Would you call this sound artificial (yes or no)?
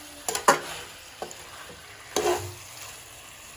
no